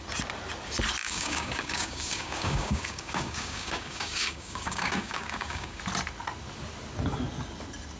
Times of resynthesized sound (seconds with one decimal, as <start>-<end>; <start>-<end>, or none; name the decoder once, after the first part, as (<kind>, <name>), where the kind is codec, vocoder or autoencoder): 1.0-5.8 (codec, DAC)